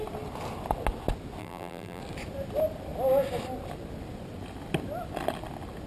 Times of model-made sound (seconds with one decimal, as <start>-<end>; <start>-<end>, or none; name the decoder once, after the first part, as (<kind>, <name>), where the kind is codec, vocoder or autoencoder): 1.4-2.0 (vocoder, BigVGAN v2)